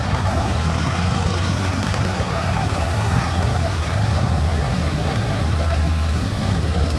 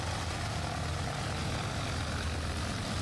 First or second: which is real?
second